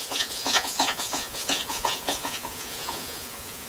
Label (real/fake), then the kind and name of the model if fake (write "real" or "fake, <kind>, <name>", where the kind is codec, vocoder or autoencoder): fake, vocoder, Vocos